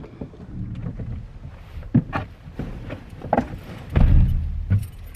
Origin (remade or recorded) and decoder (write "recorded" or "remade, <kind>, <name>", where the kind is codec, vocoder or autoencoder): recorded